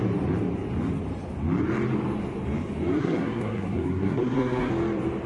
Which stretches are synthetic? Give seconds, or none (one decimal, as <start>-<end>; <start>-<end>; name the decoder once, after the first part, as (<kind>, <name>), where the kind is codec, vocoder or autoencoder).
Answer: 3.0-4.7 (codec, SNAC)